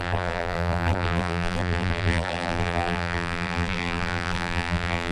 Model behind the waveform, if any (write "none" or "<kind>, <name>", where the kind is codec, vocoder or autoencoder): vocoder, BigVGAN v2